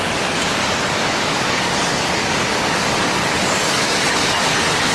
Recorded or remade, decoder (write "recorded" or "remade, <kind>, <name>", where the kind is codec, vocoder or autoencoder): remade, codec, DAC